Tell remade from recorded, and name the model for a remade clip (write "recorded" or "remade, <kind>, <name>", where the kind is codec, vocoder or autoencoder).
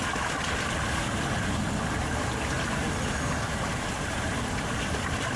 recorded